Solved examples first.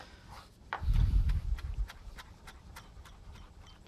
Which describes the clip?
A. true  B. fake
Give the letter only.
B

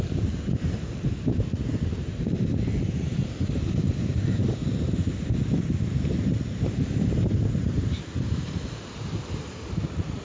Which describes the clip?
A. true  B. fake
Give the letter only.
B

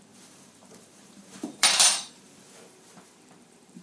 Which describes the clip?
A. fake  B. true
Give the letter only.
A